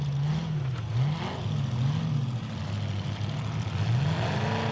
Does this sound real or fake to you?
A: real